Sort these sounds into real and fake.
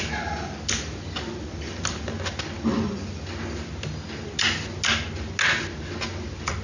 real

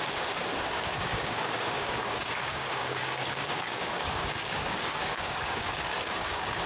fake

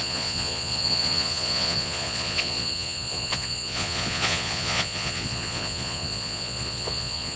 fake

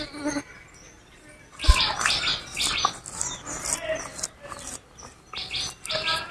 real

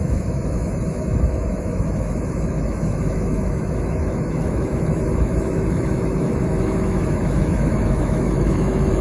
fake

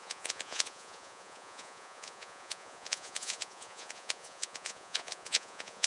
fake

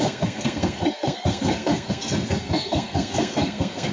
fake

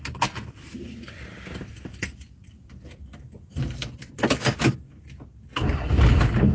real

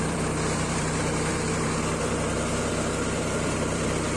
fake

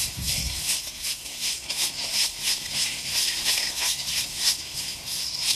fake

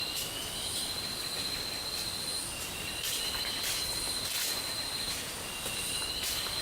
real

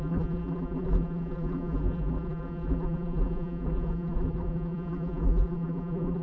fake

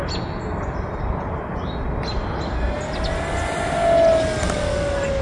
real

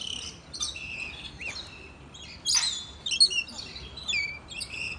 real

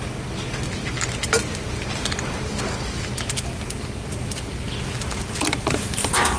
real